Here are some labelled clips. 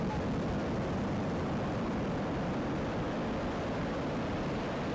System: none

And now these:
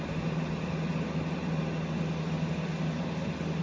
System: none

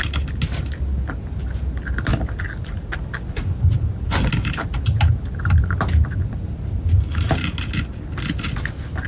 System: none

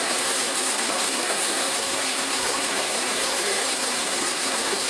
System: codec, SNAC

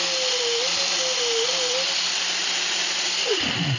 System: none